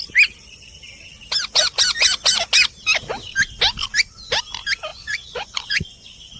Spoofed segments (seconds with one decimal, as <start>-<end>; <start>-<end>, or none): 4.9-6.4

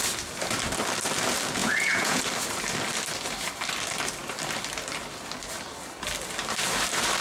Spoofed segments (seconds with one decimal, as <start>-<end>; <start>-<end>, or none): 1.6-2.2

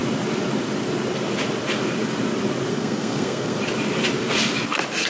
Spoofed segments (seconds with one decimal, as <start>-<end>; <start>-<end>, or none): 2.7-3.6

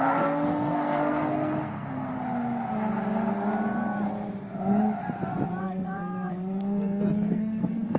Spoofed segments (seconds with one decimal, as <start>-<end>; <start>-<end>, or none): 0.0-2.1; 5.6-8.0

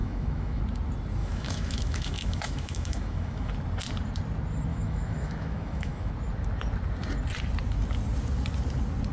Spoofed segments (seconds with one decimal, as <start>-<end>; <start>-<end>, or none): 0.0-0.6; 1.2-3.5; 4.7-6.1

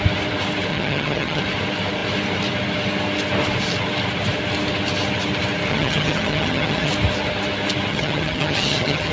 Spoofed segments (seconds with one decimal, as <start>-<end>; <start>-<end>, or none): 0.7-1.4; 5.7-6.9; 7.9-9.1